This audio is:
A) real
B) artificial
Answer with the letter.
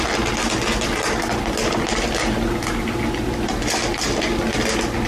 A